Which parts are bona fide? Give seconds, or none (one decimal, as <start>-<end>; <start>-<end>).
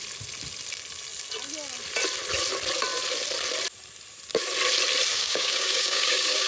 0.0-5.1